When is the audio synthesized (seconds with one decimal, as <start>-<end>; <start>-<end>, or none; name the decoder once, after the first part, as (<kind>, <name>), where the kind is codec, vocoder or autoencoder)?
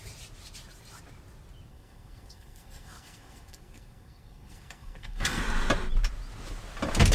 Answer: 1.7-5.4 (codec, SNAC)